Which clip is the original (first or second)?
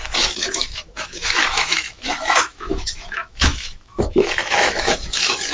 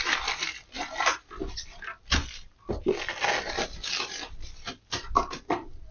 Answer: second